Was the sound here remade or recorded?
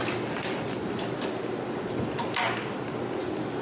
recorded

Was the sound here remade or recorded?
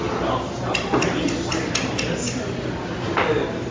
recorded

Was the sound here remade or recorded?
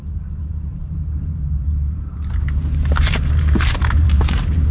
remade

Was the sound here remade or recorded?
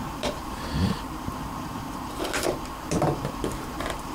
remade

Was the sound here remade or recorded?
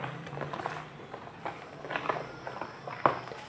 recorded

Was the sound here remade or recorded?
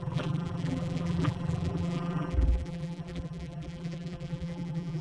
remade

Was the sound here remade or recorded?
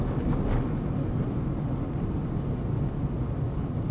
recorded